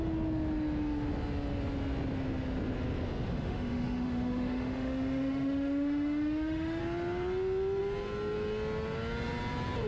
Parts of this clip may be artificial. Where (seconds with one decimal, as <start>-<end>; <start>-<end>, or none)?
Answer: 3.3-6.8